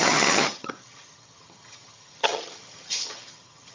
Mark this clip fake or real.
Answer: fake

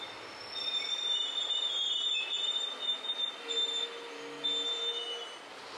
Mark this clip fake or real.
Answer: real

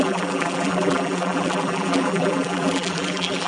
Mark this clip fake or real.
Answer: fake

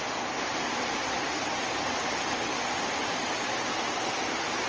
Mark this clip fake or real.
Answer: real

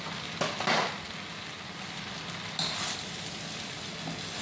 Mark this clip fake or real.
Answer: real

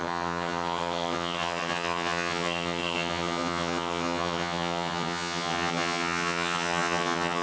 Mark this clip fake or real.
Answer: fake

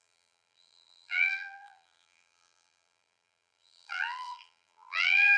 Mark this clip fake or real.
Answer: fake